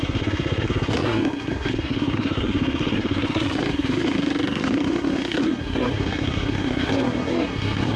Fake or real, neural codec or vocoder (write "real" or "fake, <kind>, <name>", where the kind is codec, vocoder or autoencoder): fake, codec, SNAC